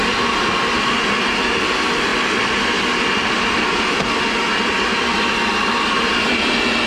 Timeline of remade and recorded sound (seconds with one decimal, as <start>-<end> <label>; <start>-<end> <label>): 0.0-2.1 remade; 2.1-2.9 recorded; 2.9-6.9 remade